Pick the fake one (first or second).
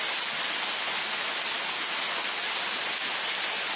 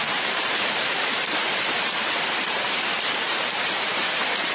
second